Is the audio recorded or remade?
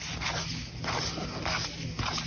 recorded